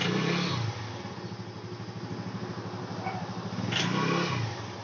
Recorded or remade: recorded